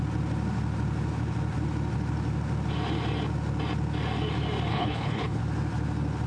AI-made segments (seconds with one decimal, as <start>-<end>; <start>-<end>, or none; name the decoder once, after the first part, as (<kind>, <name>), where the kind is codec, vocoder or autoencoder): 4.7-5.4 (codec, HILCodec)